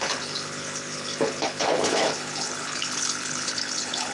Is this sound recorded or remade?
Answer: remade